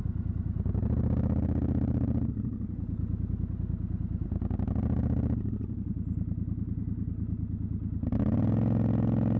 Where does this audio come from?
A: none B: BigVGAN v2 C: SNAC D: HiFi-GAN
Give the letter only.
A